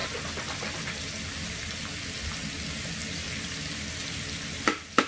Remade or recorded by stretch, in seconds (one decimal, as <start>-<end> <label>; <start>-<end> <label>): 0.0-5.1 recorded